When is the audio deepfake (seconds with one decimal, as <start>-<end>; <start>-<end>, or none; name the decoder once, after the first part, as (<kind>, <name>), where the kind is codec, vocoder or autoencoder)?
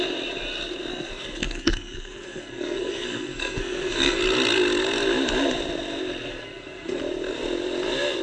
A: 0.9-4.2 (codec, SNAC); 6.3-7.0